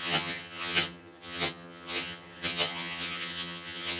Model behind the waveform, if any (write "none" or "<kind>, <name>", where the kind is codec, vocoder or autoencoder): vocoder, HiFi-GAN